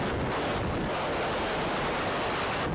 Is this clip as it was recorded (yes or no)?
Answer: yes